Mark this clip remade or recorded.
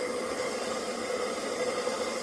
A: recorded